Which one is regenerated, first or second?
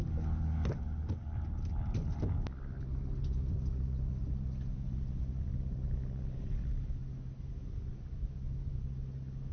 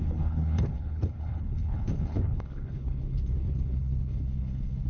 second